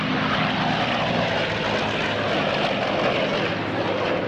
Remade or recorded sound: recorded